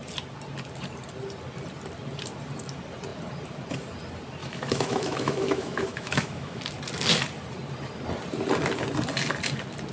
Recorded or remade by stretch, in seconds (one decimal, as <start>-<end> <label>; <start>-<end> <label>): 0.0-4.4 recorded; 4.4-6.6 remade; 6.6-9.9 recorded